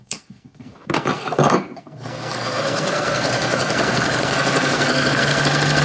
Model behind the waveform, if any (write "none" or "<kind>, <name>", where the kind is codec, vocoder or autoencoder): codec, SNAC